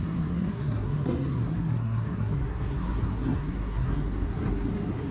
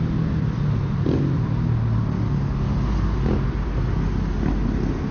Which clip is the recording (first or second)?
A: second